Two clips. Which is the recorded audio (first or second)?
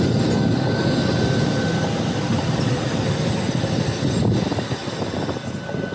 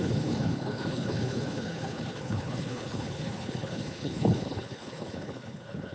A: first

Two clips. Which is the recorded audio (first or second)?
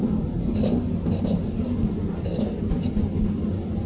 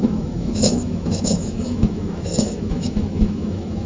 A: first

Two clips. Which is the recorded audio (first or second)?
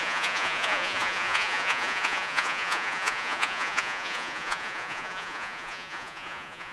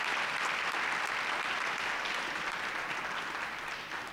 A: second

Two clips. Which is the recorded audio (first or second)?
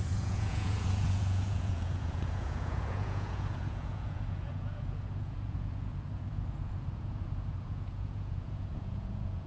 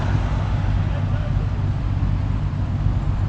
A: second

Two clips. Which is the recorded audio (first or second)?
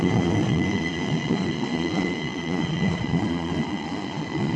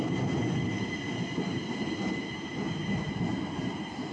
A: second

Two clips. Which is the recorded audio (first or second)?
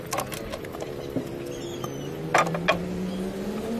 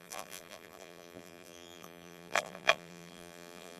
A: first